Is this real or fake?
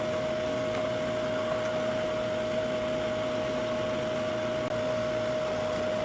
real